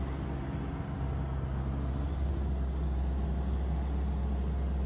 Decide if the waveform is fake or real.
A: real